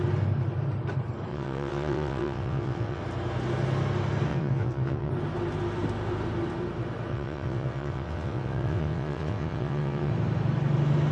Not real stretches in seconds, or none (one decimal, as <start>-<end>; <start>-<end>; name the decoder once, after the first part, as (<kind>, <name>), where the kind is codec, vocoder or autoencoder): 1.3-3.0 (vocoder, WaveNeXt); 4.3-5.1; 7.1-10.1